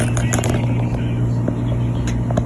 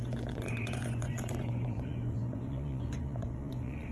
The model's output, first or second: second